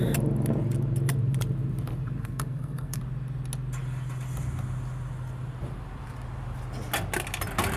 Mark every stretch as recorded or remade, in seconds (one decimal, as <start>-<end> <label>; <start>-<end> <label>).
0.0-2.2 recorded; 2.2-3.0 remade; 3.0-7.8 recorded